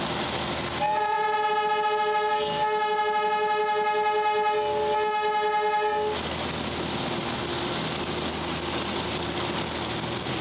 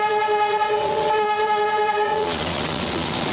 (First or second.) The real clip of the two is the first